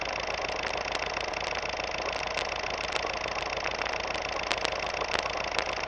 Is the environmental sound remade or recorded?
recorded